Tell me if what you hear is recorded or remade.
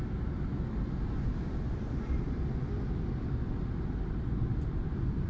recorded